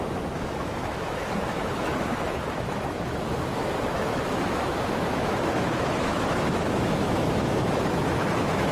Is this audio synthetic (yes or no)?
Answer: yes